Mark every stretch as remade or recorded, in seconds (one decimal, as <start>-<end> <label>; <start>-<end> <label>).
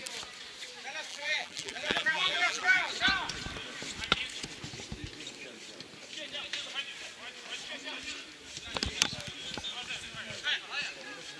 0.0-1.1 recorded; 1.1-2.9 remade; 2.9-11.4 recorded